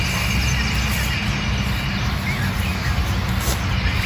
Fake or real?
real